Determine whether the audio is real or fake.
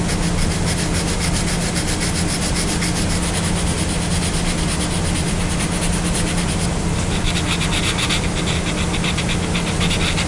real